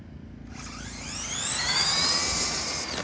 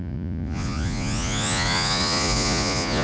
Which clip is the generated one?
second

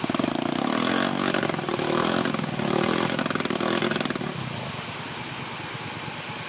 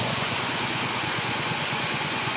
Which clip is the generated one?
second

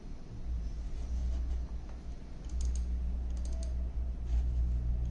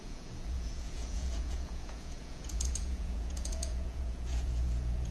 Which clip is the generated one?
second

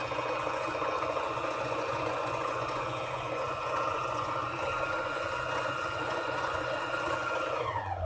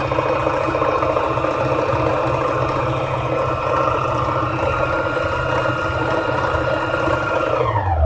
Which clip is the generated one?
first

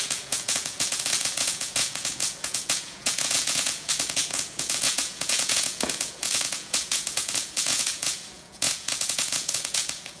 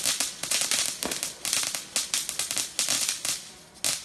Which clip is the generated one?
first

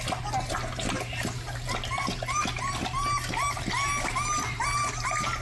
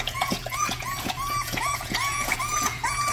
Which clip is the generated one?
second